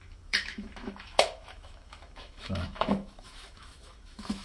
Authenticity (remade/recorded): remade